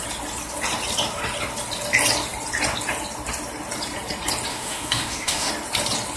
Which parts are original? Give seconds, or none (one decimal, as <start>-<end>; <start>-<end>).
0.0-4.5; 5.5-6.2